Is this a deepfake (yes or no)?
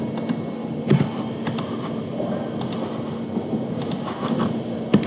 no